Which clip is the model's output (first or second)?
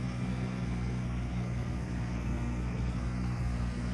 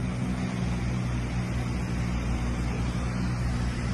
first